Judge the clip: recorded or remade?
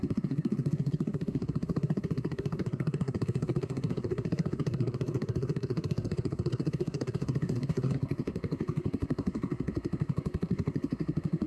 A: remade